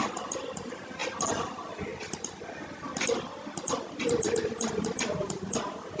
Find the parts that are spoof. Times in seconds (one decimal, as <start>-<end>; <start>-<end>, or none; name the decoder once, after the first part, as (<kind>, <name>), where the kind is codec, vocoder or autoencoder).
0.0-1.0 (vocoder, BigVGAN v2); 1.5-1.9; 3.6-6.0